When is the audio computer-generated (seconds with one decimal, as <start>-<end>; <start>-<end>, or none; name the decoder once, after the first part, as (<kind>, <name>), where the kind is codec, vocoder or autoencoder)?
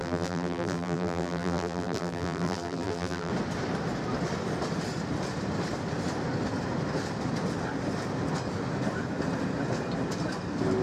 0.0-3.3 (vocoder, BigVGAN v2)